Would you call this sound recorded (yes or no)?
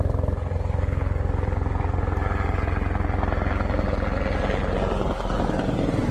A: yes